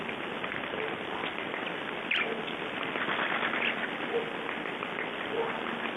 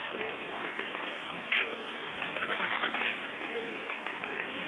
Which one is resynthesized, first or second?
second